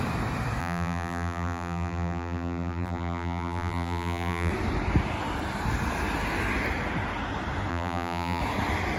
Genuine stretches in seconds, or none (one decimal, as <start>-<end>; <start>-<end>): 0.0-0.6; 4.5-7.7; 8.4-9.0